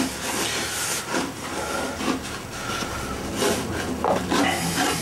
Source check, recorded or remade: recorded